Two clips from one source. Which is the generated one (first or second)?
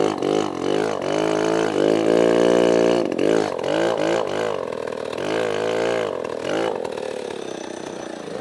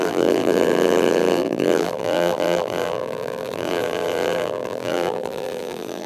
second